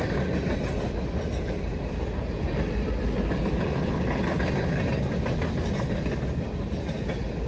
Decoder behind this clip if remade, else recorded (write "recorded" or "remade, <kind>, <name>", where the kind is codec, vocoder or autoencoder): recorded